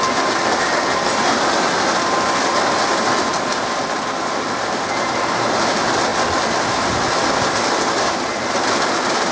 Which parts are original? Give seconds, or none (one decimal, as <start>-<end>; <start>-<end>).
0.0-9.3